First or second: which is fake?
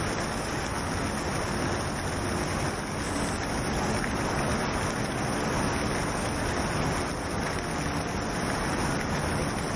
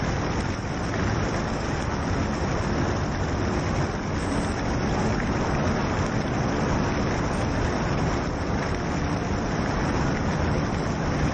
second